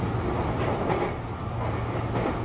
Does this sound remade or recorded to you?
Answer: recorded